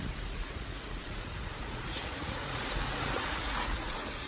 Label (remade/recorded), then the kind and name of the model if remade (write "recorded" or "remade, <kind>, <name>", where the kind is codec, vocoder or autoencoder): remade, vocoder, Vocos